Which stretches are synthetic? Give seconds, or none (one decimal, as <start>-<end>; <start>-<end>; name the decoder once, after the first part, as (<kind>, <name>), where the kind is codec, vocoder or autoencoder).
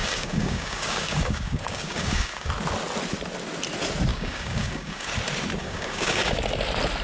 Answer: 0.0-2.5 (codec, DAC); 4.1-5.1; 5.6-6.4